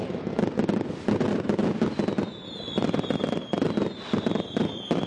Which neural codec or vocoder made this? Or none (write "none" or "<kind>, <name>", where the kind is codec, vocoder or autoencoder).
none